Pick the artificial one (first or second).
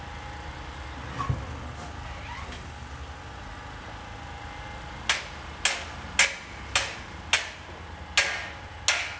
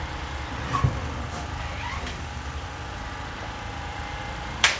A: second